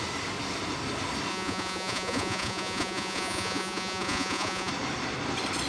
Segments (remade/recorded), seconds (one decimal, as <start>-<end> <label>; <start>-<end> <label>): 0.0-1.3 recorded; 1.3-4.7 remade; 4.7-5.7 recorded